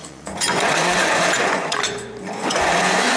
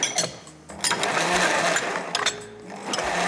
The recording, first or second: second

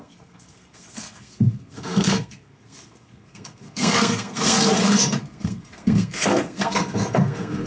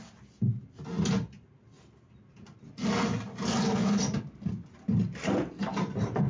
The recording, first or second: second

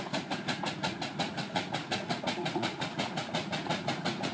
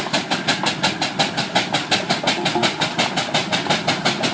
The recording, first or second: second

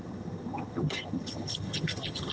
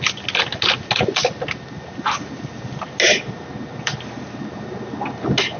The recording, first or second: second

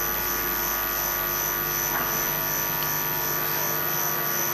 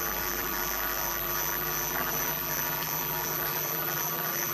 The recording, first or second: first